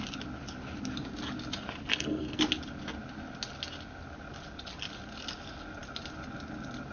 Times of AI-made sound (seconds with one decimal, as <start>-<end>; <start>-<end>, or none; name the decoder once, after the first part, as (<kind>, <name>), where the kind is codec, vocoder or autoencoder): 1.9-2.4 (codec, SNAC)